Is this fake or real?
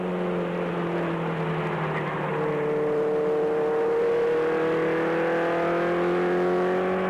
real